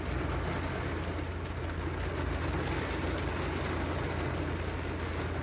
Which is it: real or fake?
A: real